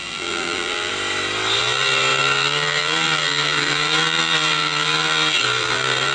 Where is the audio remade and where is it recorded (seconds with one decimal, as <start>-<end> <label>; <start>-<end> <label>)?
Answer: 0.0-0.9 remade; 0.9-1.6 recorded; 1.6-6.1 remade